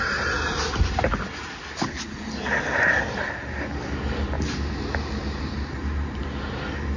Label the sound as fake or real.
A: real